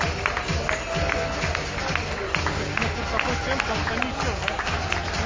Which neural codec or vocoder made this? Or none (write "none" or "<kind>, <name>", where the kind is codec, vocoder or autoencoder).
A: none